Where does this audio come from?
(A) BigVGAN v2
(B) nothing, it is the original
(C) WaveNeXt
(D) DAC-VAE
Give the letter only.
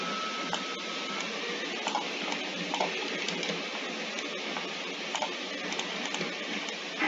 B